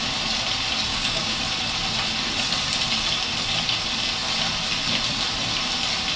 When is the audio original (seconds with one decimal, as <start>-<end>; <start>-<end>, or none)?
0.0-0.9; 1.4-6.2